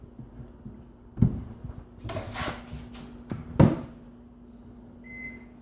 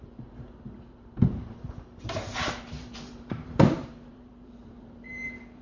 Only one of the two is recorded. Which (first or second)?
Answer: first